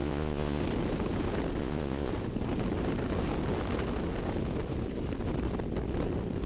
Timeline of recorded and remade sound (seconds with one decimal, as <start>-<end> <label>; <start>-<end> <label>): 0.0-0.6 remade; 0.6-1.6 recorded; 1.6-2.1 remade; 2.1-6.5 recorded